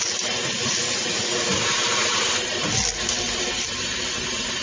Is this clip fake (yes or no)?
no